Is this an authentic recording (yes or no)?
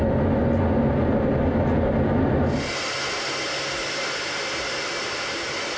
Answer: yes